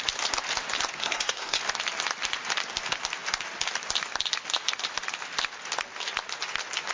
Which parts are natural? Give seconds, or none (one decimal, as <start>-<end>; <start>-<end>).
0.0-1.0; 1.6-6.9